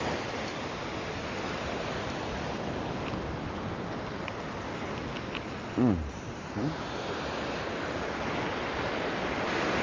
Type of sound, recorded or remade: recorded